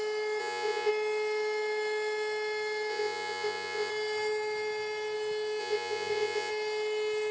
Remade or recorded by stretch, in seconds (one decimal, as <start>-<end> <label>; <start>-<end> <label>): 0.0-0.4 recorded; 0.4-0.9 remade; 0.9-2.9 recorded; 2.9-3.9 remade; 3.9-5.6 recorded; 5.6-6.5 remade; 6.5-7.3 recorded